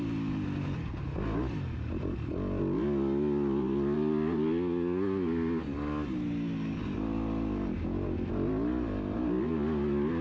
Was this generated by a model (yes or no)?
no